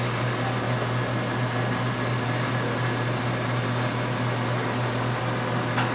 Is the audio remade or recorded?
recorded